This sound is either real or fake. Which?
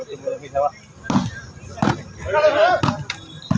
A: real